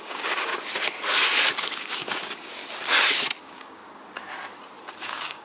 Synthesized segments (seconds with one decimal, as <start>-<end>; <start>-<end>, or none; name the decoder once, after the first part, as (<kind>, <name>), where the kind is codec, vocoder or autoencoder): 0.0-0.5 (codec, DAC); 1.6-2.6; 3.4-3.8; 4.9-5.4